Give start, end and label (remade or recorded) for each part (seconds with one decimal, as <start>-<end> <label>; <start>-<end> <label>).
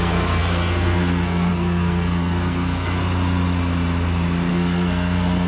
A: 0.0-3.0 remade; 3.0-4.5 recorded; 4.5-5.5 remade